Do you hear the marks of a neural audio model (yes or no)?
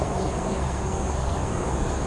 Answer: yes